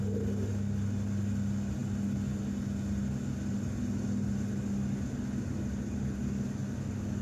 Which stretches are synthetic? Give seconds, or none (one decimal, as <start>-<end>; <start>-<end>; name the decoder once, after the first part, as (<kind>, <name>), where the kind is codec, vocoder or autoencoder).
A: none